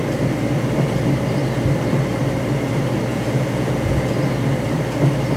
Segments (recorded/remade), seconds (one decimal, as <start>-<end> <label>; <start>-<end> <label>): 0.0-3.1 recorded; 3.1-4.1 remade; 4.1-5.4 recorded